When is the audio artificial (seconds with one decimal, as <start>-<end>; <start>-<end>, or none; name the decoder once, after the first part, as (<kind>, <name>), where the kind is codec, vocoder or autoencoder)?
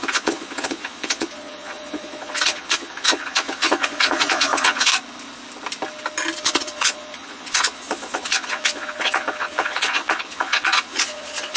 0.0-4.9 (vocoder, Vocos); 6.4-11.6